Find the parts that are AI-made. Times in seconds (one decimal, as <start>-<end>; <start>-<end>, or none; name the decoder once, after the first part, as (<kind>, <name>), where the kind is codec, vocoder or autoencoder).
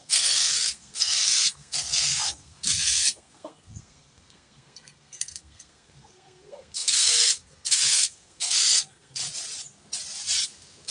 0.0-9.2 (codec, SNAC)